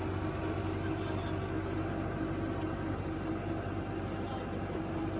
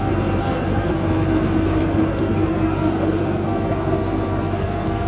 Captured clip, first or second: first